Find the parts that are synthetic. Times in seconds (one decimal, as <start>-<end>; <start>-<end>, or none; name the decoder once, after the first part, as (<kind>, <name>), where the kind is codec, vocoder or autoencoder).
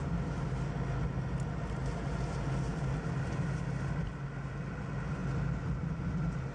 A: none